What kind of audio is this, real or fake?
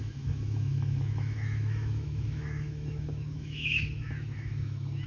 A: fake